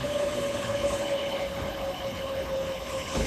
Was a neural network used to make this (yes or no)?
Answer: yes